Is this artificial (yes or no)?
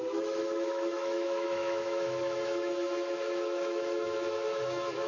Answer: yes